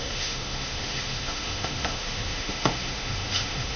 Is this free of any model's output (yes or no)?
no